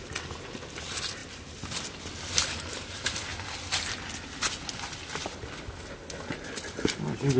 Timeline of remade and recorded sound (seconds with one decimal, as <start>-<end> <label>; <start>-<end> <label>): 0.0-7.4 recorded